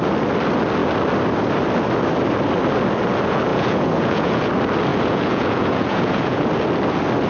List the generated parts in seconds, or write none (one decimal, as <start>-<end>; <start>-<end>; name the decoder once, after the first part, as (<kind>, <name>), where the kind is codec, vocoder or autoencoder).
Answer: 3.5-4.5 (vocoder, Vocos); 4.9-6.5